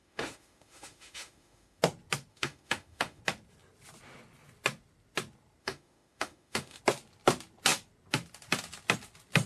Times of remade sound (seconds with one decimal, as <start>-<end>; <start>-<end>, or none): 0.0-1.8; 2.3-3.2; 5.6-6.8